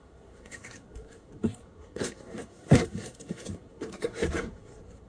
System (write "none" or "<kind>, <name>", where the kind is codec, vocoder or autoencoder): codec, SNAC